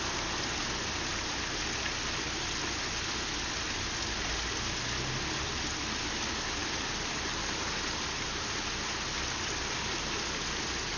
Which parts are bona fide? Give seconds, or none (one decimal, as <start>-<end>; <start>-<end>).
0.0-11.0